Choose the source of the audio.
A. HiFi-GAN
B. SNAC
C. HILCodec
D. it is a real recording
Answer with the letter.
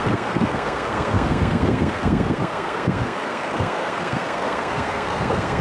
B